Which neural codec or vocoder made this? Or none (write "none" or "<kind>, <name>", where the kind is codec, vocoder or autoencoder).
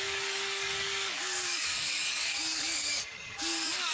codec, DAC